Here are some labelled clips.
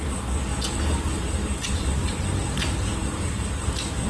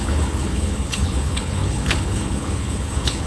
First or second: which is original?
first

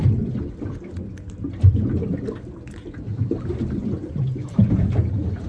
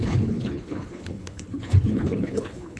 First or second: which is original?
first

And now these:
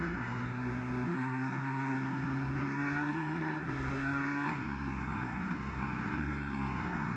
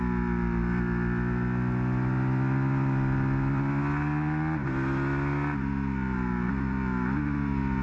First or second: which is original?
second